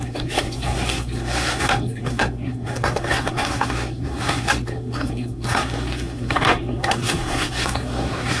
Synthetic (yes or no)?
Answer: yes